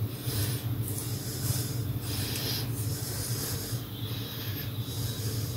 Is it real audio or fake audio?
real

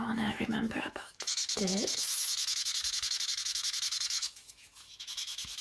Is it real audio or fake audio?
fake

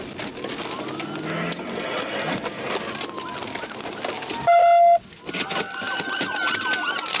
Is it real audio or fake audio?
real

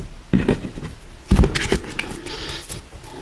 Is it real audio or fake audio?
real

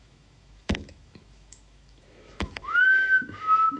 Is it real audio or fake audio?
fake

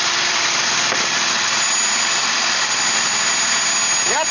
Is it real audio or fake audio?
real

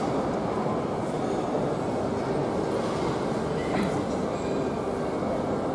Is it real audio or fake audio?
real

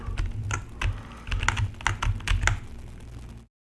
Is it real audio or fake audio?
real